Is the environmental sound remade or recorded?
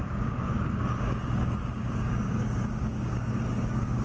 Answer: remade